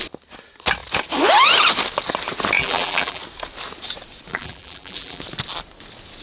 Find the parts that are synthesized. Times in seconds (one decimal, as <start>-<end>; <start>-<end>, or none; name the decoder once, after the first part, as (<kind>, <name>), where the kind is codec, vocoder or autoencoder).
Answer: 2.6-3.2 (vocoder, BigVGAN v2); 4.3-5.2